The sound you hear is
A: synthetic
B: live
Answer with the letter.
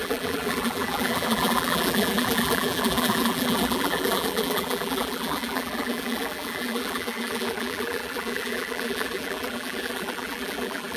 A